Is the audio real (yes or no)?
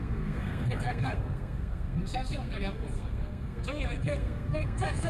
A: no